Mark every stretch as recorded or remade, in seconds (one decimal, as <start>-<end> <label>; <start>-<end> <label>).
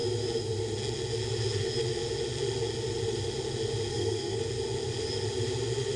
0.0-3.9 recorded; 3.9-4.4 remade; 4.4-6.0 recorded